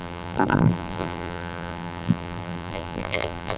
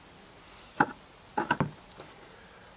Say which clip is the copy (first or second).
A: first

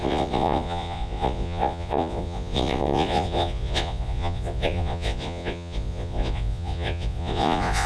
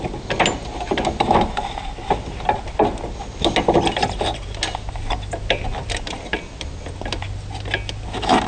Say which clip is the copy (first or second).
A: first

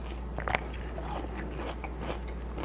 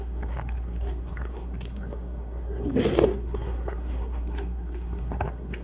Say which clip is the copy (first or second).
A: second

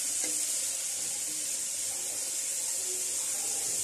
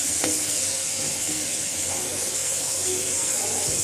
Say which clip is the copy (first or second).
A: second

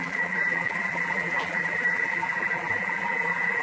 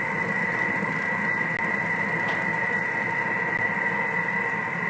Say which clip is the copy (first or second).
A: first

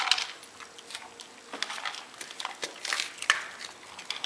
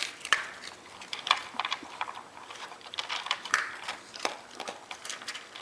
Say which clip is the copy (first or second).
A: second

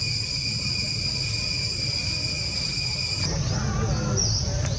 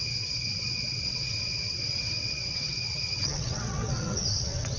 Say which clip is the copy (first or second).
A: second